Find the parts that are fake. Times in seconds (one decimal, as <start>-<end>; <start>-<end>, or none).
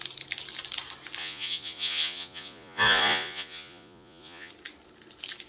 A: 1.2-4.5